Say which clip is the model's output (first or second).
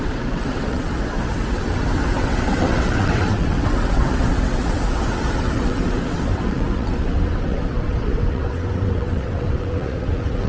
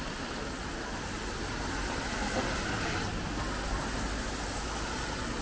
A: first